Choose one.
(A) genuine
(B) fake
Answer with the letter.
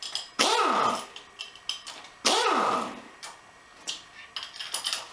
A